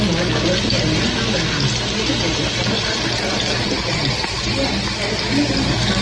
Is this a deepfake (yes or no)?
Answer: no